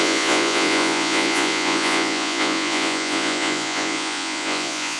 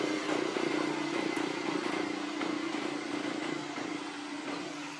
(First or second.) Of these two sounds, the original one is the second